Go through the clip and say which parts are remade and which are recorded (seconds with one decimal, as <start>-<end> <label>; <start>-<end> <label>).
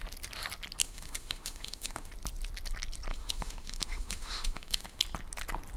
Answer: 0.0-0.8 recorded; 0.8-2.1 remade; 2.1-3.1 recorded; 3.1-5.0 remade; 5.0-5.8 recorded